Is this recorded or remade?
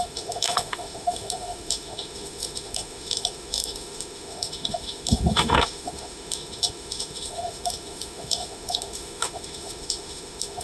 remade